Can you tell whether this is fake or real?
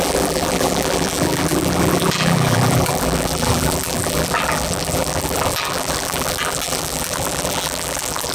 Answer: fake